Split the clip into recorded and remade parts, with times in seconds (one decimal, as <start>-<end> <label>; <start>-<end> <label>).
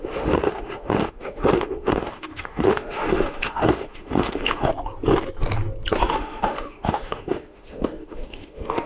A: 0.0-4.7 remade; 4.7-6.1 recorded; 6.1-8.9 remade